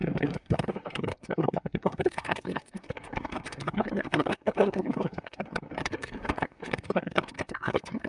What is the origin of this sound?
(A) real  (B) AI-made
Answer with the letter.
B